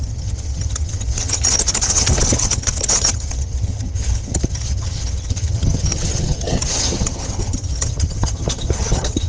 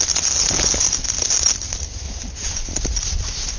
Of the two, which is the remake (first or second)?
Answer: first